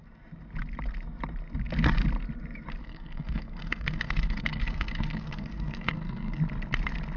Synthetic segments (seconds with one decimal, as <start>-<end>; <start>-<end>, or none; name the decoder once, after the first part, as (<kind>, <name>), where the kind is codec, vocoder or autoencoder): 2.8-6.4 (codec, SNAC)